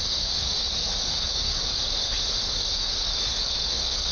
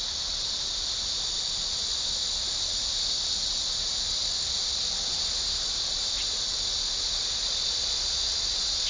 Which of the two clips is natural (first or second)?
second